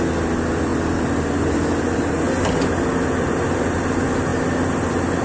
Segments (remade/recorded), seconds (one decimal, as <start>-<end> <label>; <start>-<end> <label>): 0.0-5.2 recorded